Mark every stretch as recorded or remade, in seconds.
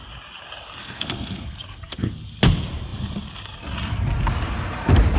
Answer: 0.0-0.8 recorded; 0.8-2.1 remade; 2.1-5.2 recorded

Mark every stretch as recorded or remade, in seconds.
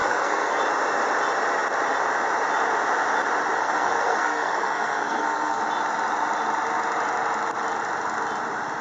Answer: 0.0-0.6 remade; 0.6-3.6 recorded; 3.6-5.6 remade; 5.6-8.8 recorded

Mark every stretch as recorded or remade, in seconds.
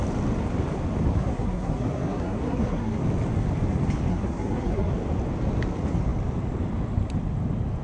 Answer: 0.0-1.1 recorded; 1.1-3.0 remade; 3.0-4.1 recorded; 4.1-4.9 remade; 4.9-7.8 recorded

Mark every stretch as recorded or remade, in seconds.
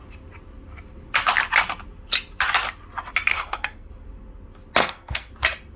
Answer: 0.0-3.3 recorded; 3.3-3.9 remade; 3.9-4.8 recorded; 4.8-5.3 remade; 5.3-5.8 recorded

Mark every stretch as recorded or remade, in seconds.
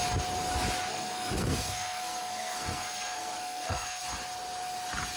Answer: 0.0-0.9 recorded; 0.9-4.0 remade; 4.0-5.2 recorded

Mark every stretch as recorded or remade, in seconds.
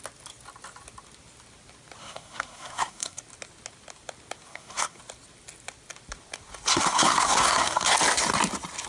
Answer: 0.0-2.0 recorded; 2.0-3.2 remade; 3.2-4.5 recorded; 4.5-5.0 remade; 5.0-6.7 recorded; 6.7-7.9 remade; 7.9-8.9 recorded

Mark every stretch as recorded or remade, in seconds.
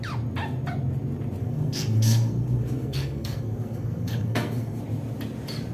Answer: 0.0-1.4 recorded; 1.4-4.8 remade; 4.8-5.7 recorded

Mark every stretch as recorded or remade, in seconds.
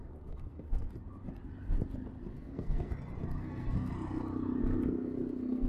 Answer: 0.0-0.9 remade; 0.9-2.3 recorded; 2.3-2.9 remade; 2.9-3.4 recorded; 3.4-3.9 remade; 3.9-4.6 recorded; 4.6-5.7 remade